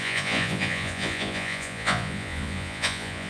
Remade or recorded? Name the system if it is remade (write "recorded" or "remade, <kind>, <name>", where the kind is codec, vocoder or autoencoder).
remade, vocoder, Vocos